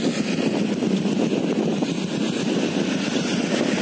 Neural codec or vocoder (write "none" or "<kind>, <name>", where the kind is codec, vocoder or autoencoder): none